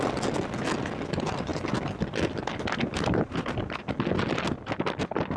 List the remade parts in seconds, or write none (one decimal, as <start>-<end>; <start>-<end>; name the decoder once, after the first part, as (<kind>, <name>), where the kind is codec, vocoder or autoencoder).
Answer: none